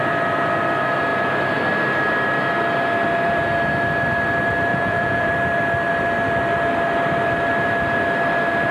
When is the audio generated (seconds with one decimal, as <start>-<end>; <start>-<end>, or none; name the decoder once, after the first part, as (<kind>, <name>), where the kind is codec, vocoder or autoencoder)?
4.7-5.3 (vocoder, Vocos)